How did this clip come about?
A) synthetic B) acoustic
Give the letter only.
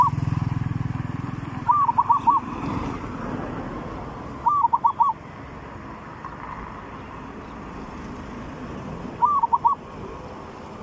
B